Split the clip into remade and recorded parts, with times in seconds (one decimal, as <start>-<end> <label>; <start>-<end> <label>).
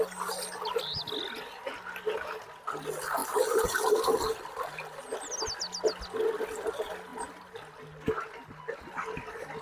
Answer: 0.0-3.2 recorded; 3.2-5.0 remade; 5.0-9.6 recorded